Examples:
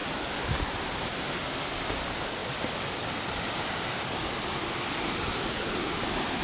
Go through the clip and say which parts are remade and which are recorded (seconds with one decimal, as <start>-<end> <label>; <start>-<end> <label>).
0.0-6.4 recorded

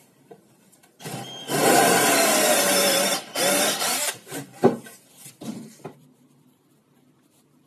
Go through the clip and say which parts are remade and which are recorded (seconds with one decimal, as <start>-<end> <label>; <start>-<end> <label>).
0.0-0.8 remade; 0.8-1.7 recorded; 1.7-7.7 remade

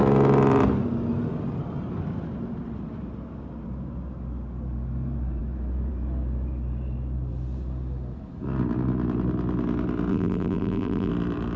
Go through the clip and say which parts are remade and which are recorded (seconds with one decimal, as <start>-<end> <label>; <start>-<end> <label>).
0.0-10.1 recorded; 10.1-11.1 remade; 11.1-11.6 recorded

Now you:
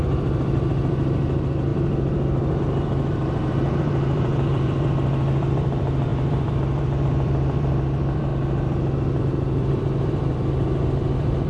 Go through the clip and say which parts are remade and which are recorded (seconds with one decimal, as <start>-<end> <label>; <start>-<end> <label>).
0.0-8.3 remade; 8.3-9.2 recorded; 9.2-11.5 remade

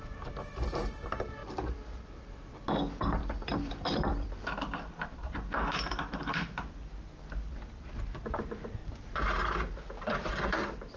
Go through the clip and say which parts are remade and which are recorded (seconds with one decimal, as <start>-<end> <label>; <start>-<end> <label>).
0.0-3.2 recorded; 3.2-6.7 remade; 6.7-8.8 recorded; 8.8-10.3 remade; 10.3-11.0 recorded